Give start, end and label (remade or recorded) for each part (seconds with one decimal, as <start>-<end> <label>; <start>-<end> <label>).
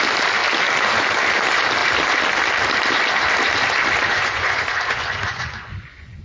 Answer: 0.0-4.1 recorded; 4.1-6.2 remade